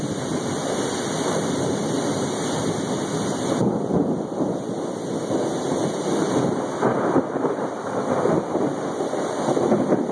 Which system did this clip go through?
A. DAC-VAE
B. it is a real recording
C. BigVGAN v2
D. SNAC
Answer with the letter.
B